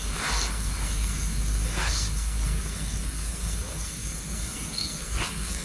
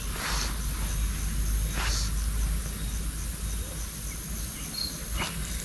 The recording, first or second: second